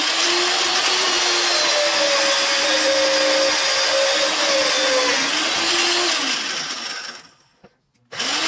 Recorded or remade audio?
recorded